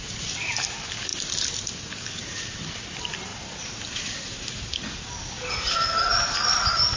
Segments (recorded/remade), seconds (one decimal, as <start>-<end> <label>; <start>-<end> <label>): 0.0-7.0 recorded